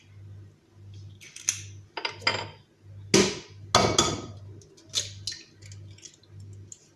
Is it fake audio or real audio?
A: real